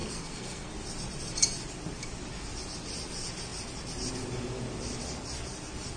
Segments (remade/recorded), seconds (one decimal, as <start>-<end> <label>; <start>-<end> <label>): 0.0-0.7 remade; 0.7-6.0 recorded